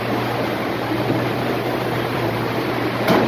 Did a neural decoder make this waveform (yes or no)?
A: yes